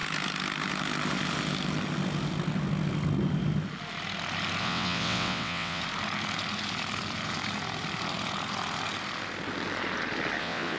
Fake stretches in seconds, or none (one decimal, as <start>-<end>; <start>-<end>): 4.6-5.8; 10.4-10.8